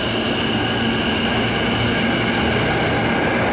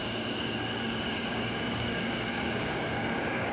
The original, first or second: first